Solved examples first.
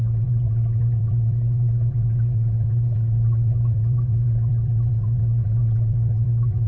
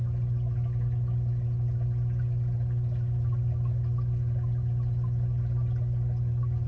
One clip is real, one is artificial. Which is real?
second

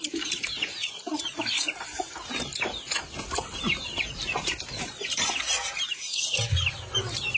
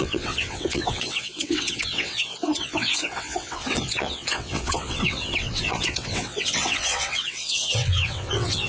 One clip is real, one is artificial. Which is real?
first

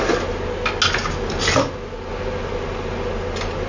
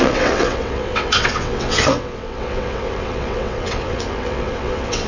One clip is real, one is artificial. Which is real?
first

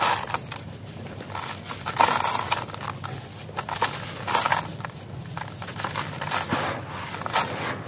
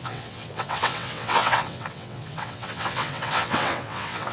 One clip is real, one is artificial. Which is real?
first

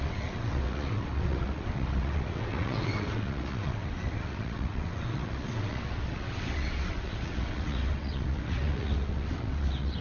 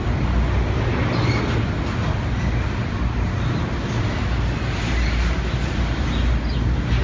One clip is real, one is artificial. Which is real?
second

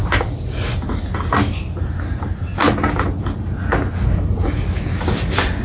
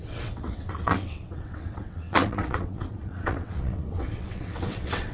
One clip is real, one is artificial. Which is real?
first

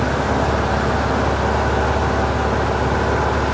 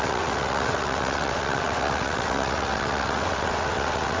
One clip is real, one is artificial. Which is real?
first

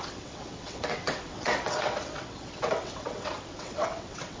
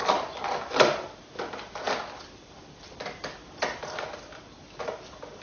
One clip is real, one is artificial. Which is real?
second